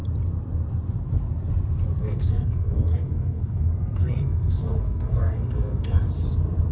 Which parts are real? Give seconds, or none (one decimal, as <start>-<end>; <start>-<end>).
0.0-2.0; 6.0-6.7